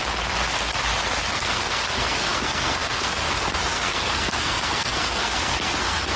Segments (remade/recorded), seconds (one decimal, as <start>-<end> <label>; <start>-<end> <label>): 0.0-1.3 recorded; 1.3-6.2 remade